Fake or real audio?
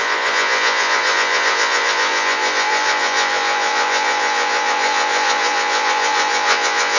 fake